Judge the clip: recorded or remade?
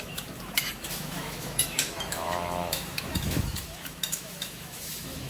remade